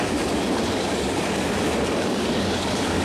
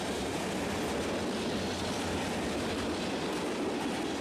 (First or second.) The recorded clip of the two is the second